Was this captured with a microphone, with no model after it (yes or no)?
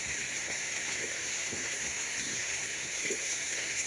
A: no